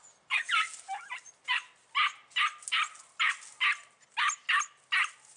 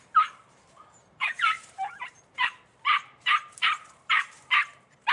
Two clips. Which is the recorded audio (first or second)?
first